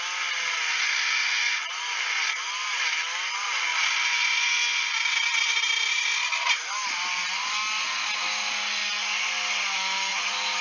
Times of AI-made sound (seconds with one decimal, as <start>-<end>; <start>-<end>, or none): none